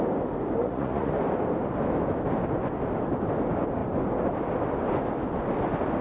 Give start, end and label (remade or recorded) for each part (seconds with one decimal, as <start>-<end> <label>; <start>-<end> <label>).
0.0-0.6 recorded; 0.6-1.1 remade; 1.1-6.0 recorded